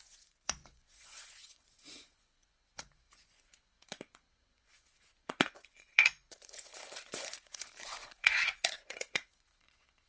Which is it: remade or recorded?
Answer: remade